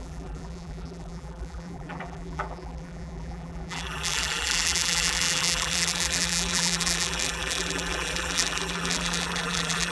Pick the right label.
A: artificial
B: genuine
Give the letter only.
A